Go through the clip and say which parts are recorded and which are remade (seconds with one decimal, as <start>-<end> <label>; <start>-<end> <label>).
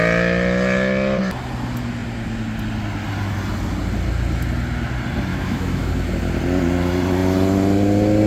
0.0-5.3 recorded; 5.3-5.9 remade; 5.9-8.3 recorded